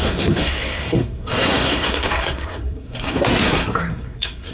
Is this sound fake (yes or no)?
yes